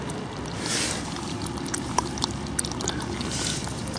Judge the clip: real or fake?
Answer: real